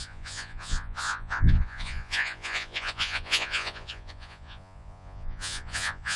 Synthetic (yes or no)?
yes